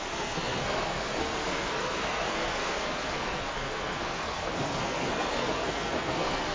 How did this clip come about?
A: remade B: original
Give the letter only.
A